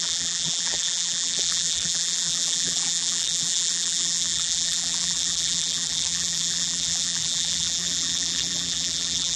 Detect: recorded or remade remade